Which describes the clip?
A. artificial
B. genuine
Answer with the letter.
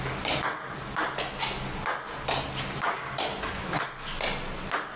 B